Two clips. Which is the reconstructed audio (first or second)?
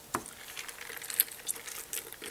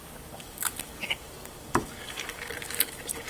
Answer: second